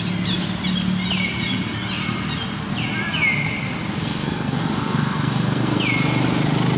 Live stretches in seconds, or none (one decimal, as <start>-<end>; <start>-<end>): 0.0-4.0; 5.8-6.8